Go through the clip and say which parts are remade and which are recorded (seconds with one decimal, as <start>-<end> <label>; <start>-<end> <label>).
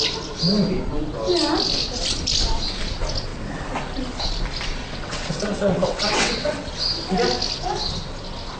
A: 0.0-4.8 recorded; 4.8-6.7 remade; 6.7-8.6 recorded